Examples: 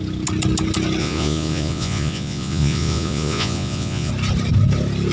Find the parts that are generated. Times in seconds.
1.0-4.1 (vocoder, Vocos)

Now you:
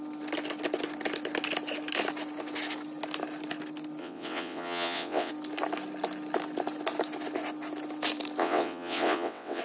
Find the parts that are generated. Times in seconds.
4.0-5.3 (vocoder, WaveNeXt); 8.4-9.6

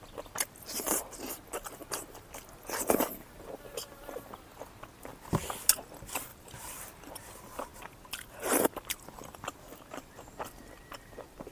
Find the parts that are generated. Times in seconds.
6.3-7.3 (vocoder, BigVGAN v2)

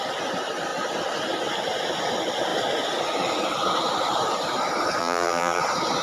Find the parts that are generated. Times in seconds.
5.0-5.6 (vocoder, BigVGAN v2)

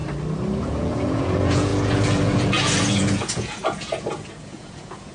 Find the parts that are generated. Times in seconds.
0.6-5.1 (vocoder, Vocos)

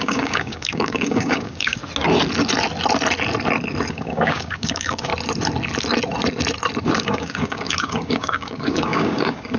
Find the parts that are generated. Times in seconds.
0.0-1.8 (codec, DAC); 3.9-5.1; 6.8-9.6

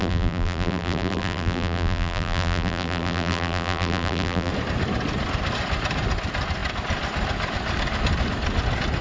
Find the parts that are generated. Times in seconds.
0.0-4.5 (vocoder, BigVGAN v2)